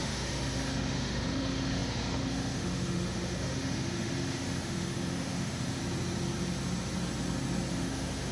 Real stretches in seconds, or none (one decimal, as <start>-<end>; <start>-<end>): 5.8-7.7